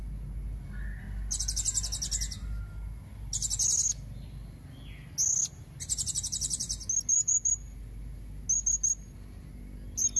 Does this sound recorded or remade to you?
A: recorded